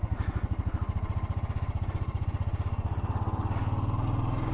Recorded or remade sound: recorded